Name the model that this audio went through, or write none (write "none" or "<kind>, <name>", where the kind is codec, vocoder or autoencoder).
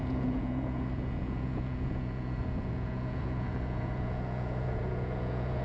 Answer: vocoder, Vocos